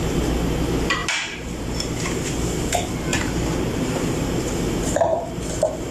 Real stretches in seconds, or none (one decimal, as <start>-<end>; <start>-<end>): 0.0-1.0; 1.8-3.1; 5.4-5.9